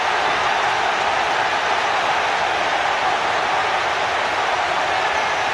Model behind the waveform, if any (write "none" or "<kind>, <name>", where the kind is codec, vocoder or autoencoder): none